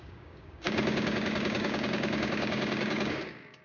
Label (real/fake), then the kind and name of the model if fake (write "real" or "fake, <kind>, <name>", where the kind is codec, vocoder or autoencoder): fake, codec, DAC